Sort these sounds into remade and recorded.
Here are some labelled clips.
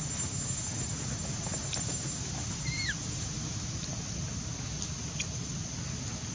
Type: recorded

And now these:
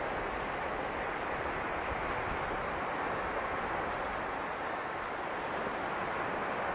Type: recorded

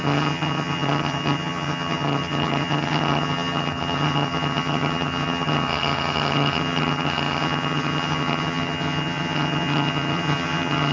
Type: remade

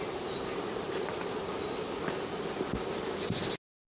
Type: recorded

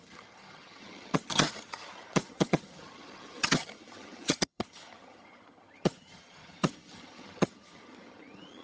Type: remade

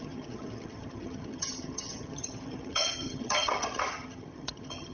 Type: remade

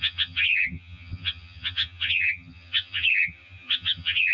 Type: remade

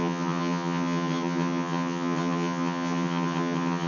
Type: remade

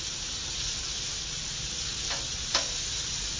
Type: recorded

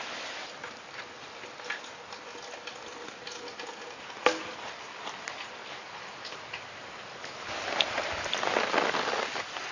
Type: recorded